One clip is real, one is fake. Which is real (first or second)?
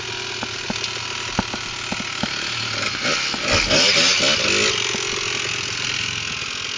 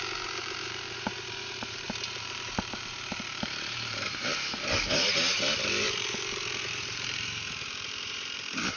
first